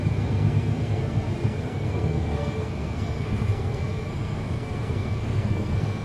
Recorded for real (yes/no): no